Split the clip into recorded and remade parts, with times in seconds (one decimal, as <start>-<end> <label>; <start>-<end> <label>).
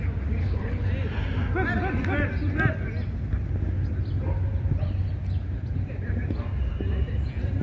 0.0-0.4 recorded; 0.4-0.9 remade; 0.9-7.6 recorded